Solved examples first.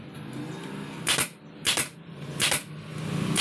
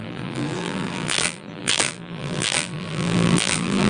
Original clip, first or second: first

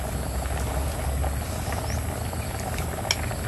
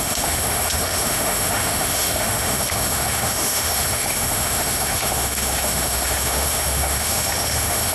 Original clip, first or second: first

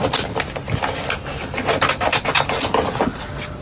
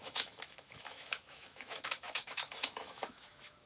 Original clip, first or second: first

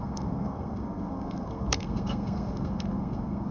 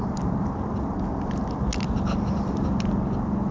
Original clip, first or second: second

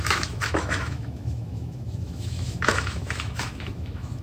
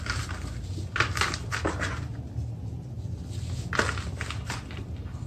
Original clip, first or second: second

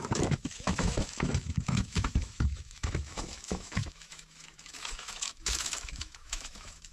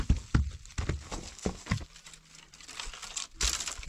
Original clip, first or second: second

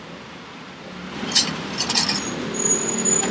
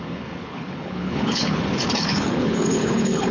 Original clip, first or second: first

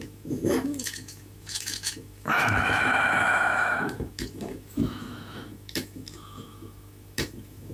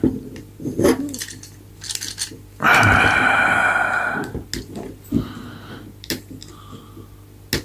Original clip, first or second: second